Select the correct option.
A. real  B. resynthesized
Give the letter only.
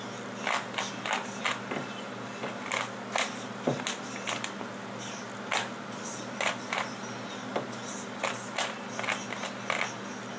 A